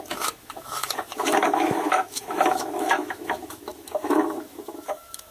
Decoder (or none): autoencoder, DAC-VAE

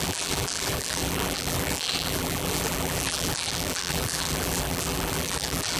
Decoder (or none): vocoder, BigVGAN v2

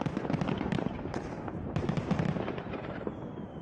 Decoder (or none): vocoder, BigVGAN v2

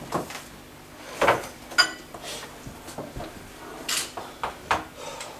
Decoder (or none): none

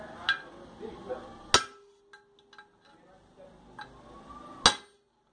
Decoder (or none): none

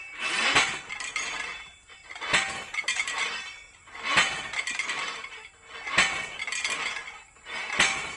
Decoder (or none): none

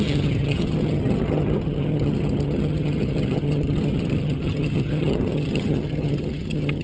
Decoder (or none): vocoder, HiFi-GAN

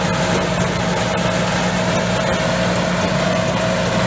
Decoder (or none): none